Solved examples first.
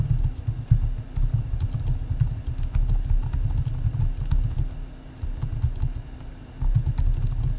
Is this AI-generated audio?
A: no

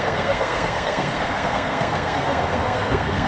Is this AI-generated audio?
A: yes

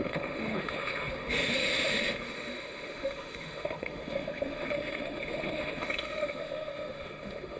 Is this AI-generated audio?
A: yes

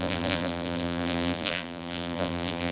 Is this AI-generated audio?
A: yes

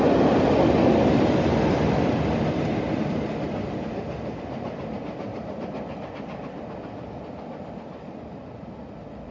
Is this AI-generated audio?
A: no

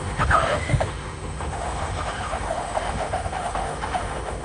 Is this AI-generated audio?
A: yes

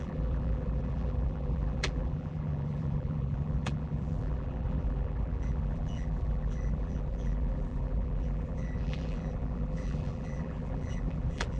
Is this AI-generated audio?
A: yes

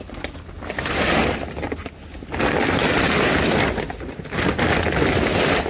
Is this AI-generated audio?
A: no